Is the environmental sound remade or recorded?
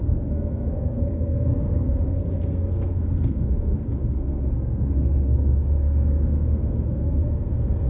remade